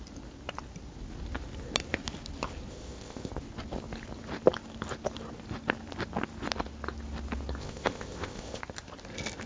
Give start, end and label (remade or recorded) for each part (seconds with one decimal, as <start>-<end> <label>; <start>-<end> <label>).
0.0-2.7 recorded; 2.7-3.3 remade; 3.3-7.6 recorded; 7.6-8.6 remade; 8.6-9.5 recorded